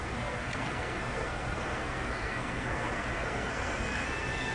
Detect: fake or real fake